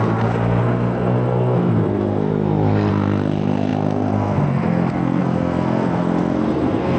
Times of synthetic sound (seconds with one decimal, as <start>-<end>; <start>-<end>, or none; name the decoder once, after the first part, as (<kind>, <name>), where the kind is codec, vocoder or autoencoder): 0.0-2.3 (codec, SNAC); 2.9-7.0